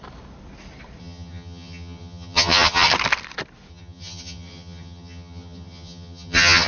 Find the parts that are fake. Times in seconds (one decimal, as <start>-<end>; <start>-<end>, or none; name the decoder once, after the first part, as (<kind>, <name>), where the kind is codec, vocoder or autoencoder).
1.0-2.9 (vocoder, HiFi-GAN); 3.7-6.7